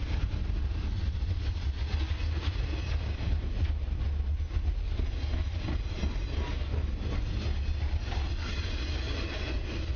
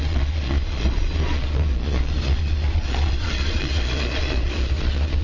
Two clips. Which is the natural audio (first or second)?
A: first